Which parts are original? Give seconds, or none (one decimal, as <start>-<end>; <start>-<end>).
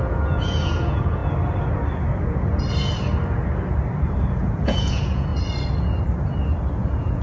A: 1.2-4.2; 5.3-6.8